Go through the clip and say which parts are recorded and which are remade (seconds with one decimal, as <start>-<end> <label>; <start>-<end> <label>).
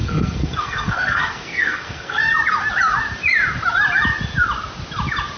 0.0-2.2 remade; 2.2-5.4 recorded